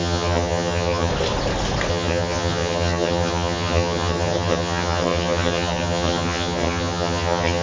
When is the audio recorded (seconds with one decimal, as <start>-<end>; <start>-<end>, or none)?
1.1-1.9